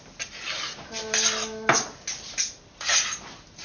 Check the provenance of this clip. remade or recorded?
recorded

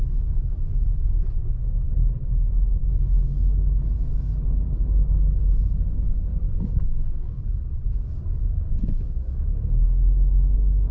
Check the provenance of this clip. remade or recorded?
remade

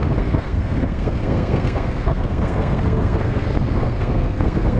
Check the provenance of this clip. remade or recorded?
remade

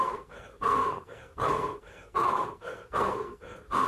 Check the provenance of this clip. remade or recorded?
remade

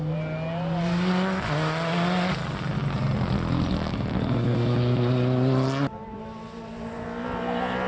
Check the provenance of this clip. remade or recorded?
recorded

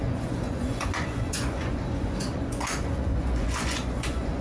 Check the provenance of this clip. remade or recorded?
remade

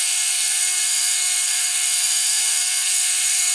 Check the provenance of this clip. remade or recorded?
remade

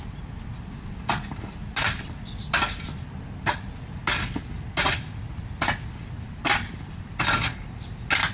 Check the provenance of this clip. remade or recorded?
recorded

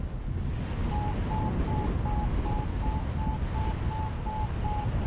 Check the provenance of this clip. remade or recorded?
recorded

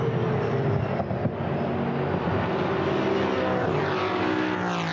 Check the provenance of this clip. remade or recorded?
recorded